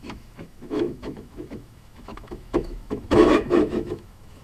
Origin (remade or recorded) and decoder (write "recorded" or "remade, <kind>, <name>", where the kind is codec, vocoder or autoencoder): remade, autoencoder, DAC-VAE